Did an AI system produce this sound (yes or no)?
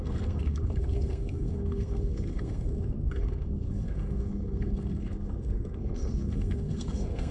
yes